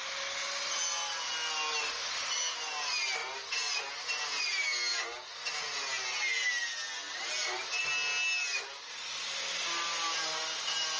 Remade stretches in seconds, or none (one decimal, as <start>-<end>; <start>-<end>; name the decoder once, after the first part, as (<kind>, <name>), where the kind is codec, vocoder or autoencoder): none